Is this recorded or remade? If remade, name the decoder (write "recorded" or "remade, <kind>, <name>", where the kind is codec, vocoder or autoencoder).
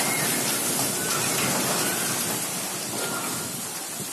recorded